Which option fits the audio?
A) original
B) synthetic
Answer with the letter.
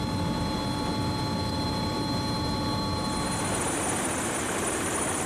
B